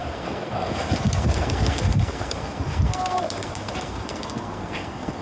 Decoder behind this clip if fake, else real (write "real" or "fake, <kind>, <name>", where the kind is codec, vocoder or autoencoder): fake, codec, SNAC